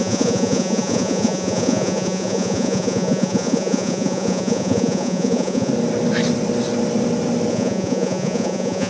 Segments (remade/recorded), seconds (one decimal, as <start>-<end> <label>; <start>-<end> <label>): 0.0-5.7 remade; 5.7-7.5 recorded; 7.5-8.9 remade